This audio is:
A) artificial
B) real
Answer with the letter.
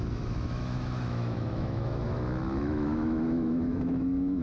A